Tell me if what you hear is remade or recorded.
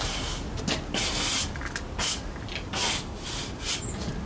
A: recorded